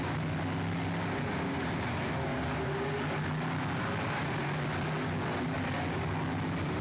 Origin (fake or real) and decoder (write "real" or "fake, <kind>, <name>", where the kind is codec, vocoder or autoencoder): real